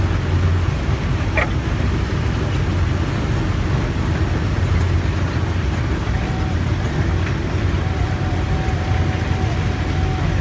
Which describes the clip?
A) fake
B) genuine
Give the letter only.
B